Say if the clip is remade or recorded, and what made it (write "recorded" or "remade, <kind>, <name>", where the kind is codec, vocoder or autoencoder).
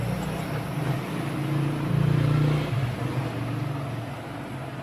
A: recorded